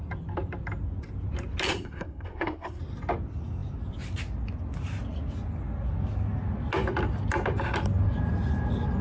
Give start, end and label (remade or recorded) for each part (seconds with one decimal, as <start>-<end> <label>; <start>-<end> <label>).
0.0-1.7 recorded; 1.7-2.8 remade; 2.8-9.0 recorded